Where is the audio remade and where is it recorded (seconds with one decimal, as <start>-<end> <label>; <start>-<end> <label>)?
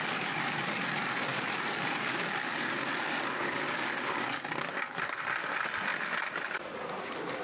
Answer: 0.0-7.4 recorded